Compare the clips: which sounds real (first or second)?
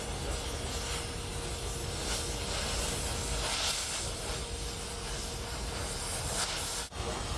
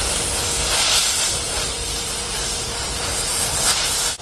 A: first